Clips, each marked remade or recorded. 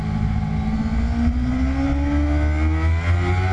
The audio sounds recorded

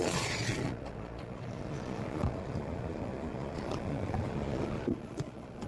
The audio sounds remade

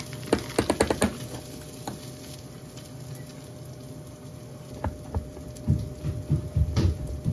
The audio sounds recorded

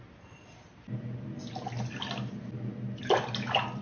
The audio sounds recorded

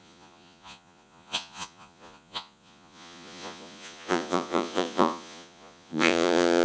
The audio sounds remade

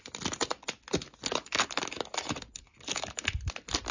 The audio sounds recorded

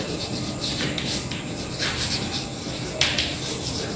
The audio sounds recorded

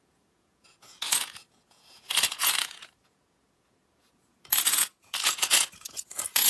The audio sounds remade